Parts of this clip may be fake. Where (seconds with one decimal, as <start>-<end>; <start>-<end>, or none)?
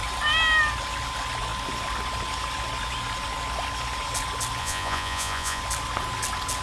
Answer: 4.6-5.6